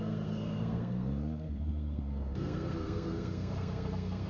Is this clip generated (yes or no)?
yes